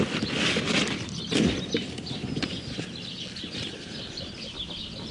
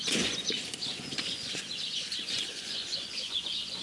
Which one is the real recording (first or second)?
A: first